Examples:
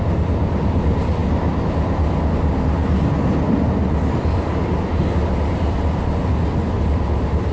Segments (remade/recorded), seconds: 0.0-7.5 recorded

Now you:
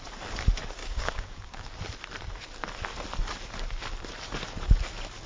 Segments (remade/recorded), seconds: 0.0-0.8 recorded; 0.8-1.8 remade; 1.8-5.3 recorded

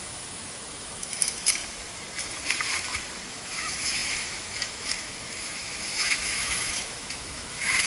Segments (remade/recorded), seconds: 0.0-1.6 remade; 1.6-3.3 recorded; 3.3-7.9 remade